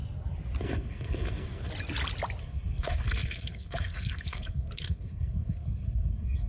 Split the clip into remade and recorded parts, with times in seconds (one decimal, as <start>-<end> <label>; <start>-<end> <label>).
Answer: 0.0-0.6 recorded; 0.6-1.7 remade; 1.7-2.4 recorded; 2.4-6.5 remade